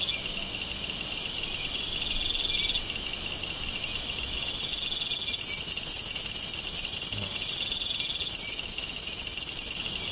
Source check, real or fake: real